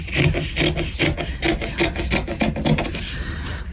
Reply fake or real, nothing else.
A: real